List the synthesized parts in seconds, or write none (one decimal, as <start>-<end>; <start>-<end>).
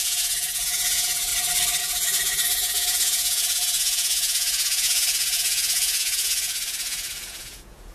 0.0-1.3; 1.8-7.9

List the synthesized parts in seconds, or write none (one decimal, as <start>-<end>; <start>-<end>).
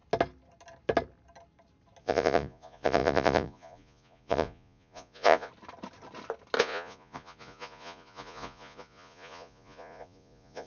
2.0-5.5; 6.6-10.7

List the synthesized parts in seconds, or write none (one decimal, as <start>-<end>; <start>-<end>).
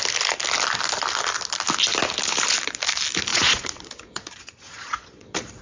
3.3-5.6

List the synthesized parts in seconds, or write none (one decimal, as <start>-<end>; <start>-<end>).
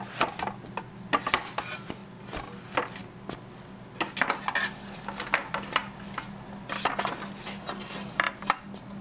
none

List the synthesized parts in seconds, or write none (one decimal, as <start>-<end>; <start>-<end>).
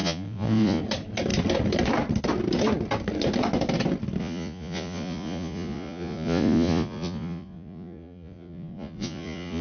0.0-0.8; 4.2-9.6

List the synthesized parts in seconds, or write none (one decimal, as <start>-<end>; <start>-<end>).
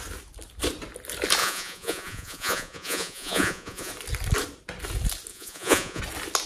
1.4-3.9; 5.3-6.0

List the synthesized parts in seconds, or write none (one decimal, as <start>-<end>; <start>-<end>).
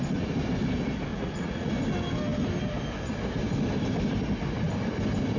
1.1-1.7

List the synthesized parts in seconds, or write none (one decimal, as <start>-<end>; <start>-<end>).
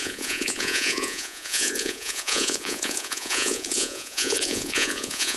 0.0-5.4